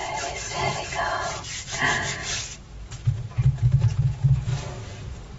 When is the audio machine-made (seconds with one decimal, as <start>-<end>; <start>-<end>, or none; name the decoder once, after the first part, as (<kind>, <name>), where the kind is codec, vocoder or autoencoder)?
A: 0.5-2.2 (vocoder, Vocos); 3.0-4.5